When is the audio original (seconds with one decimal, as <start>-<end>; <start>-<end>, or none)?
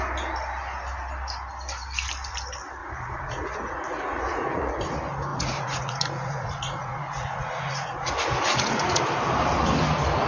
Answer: 0.0-2.8; 4.7-5.3; 9.0-10.3